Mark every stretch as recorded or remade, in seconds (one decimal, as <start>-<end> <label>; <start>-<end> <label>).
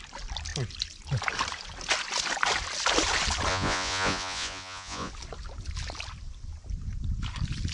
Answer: 0.0-3.5 recorded; 3.5-5.1 remade; 5.1-7.7 recorded